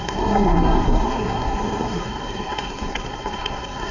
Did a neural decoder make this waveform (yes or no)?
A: yes